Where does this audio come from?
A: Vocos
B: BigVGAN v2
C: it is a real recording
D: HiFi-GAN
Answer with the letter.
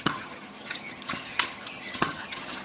D